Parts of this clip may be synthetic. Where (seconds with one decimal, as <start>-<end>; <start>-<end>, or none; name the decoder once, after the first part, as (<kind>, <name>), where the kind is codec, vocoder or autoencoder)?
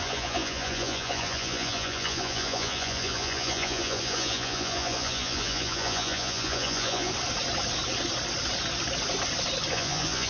0.0-7.1 (vocoder, Vocos); 9.7-10.3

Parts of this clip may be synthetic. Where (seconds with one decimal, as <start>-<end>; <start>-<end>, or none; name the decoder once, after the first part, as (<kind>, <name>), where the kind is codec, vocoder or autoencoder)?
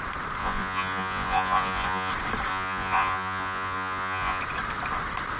0.4-2.1 (vocoder, Vocos); 2.5-4.4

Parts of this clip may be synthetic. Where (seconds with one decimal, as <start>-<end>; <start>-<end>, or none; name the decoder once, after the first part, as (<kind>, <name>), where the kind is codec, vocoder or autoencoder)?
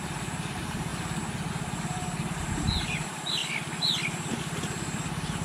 0.0-0.9 (vocoder, BigVGAN v2); 1.5-3.4; 4.4-5.4